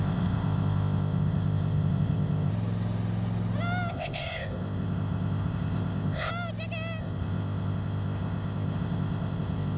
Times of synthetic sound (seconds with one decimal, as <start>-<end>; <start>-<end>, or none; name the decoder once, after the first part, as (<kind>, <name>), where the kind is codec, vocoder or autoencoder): 0.0-2.5 (codec, ZipCodec); 3.9-6.3; 7.0-9.8